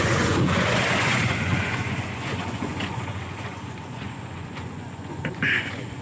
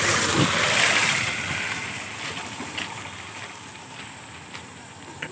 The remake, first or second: first